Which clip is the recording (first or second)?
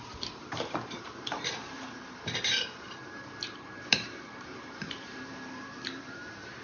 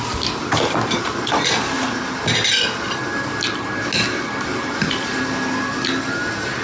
second